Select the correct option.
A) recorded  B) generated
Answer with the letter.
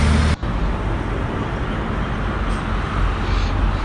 A